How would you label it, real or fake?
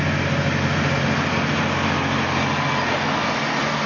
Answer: real